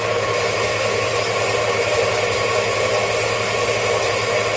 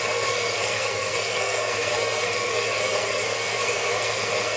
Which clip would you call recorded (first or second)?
first